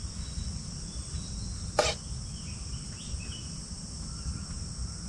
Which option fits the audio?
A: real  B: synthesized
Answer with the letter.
A